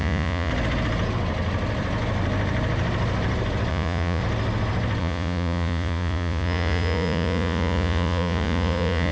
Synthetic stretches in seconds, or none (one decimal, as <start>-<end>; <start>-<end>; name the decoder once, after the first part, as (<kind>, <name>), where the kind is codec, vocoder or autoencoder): 0.0-0.5 (vocoder, Vocos); 3.7-4.2; 5.0-9.1